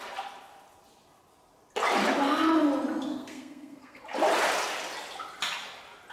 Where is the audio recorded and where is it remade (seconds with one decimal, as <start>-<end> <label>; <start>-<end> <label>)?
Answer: 0.0-3.1 recorded; 3.1-4.0 remade; 4.0-6.1 recorded